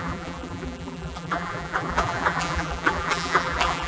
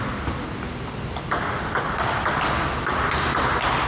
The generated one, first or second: first